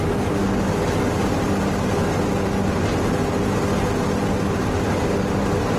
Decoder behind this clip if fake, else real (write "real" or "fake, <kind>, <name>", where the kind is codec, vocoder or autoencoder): real